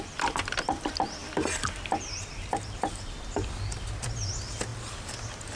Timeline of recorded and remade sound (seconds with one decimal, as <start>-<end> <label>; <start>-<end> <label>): 0.0-5.6 recorded